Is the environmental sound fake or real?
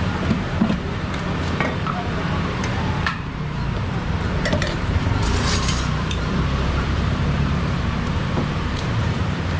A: fake